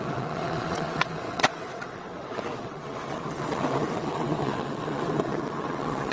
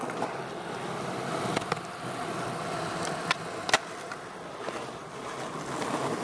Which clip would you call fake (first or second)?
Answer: first